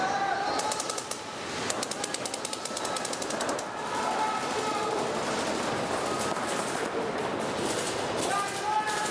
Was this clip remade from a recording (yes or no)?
no